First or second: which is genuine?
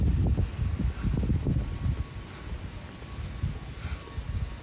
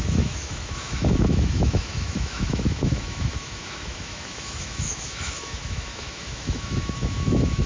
first